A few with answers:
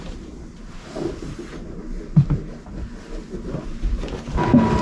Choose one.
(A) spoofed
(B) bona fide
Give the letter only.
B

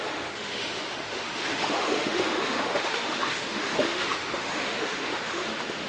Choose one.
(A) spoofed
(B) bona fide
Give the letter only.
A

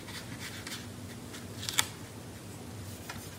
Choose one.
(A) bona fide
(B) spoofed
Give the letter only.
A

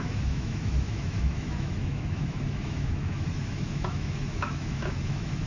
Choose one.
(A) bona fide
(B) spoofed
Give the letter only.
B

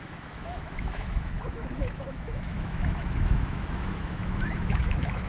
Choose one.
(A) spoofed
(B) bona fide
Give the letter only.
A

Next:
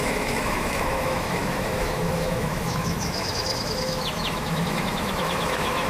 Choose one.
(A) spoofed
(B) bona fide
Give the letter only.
A